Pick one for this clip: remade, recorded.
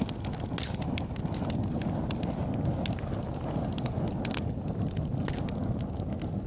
recorded